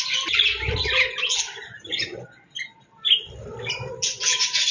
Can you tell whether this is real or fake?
real